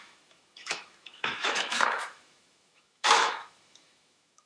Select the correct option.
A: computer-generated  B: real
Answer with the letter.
A